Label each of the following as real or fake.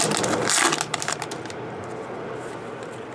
real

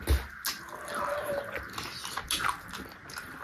real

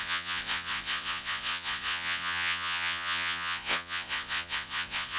fake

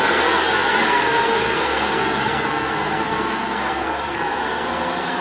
fake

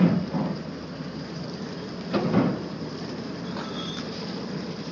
fake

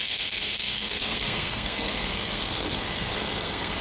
fake